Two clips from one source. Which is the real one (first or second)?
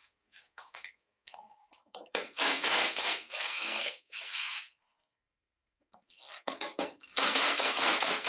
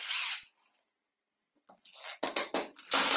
second